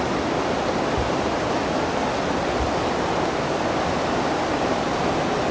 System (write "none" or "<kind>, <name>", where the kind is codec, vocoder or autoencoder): none